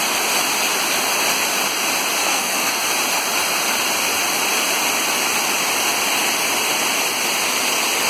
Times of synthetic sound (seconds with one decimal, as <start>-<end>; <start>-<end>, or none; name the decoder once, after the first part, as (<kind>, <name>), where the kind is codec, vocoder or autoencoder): 2.2-2.9 (codec, SNAC)